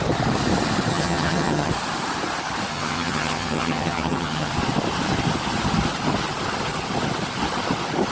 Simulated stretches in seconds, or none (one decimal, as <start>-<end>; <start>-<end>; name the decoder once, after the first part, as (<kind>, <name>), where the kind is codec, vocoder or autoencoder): 0.9-1.7 (vocoder, HiFi-GAN); 2.7-4.5